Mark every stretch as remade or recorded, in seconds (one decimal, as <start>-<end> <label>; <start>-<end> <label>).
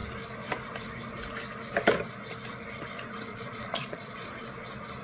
0.0-3.3 recorded; 3.3-4.3 remade; 4.3-5.0 recorded